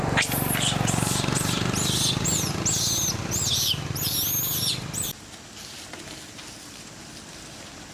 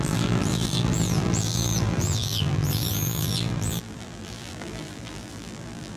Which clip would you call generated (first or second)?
second